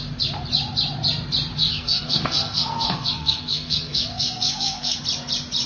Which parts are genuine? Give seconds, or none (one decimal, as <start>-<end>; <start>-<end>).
0.0-1.6; 5.0-5.7